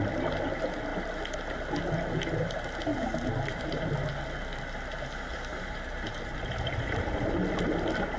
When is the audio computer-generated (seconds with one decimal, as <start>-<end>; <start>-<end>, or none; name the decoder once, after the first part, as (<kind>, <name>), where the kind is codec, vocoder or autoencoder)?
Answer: 2.9-3.9 (vocoder, BigVGAN v2); 5.5-7.2